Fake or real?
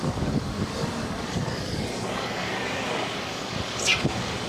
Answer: fake